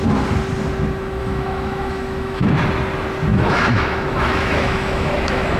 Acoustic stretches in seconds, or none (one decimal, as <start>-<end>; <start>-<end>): 0.0-1.2; 2.5-3.3